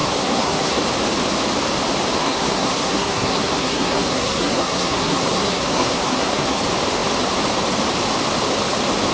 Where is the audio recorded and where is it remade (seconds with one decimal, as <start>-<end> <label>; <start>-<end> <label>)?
0.0-0.8 remade; 0.8-2.2 recorded; 2.2-6.6 remade; 6.6-9.1 recorded

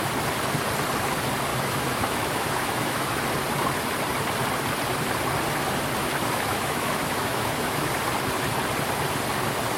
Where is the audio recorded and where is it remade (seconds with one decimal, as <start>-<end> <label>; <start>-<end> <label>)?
0.0-1.5 recorded; 1.5-3.2 remade; 3.2-6.0 recorded; 6.0-7.9 remade; 7.9-9.8 recorded

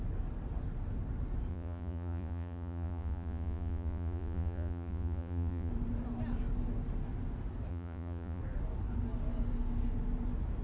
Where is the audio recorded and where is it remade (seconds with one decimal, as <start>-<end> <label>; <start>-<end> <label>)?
0.0-1.5 recorded; 1.5-5.7 remade; 5.7-7.7 recorded; 7.7-8.4 remade; 8.4-10.6 recorded